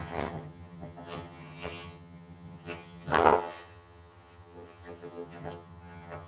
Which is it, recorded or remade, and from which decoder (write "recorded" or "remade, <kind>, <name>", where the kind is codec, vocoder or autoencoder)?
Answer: remade, vocoder, HiFi-GAN